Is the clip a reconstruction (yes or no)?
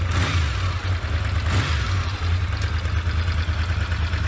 no